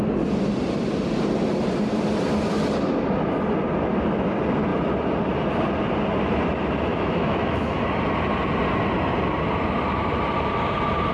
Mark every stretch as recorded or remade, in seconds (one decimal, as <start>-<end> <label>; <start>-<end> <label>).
0.0-6.9 recorded; 6.9-7.8 remade; 7.8-11.1 recorded